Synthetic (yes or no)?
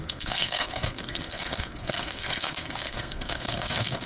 yes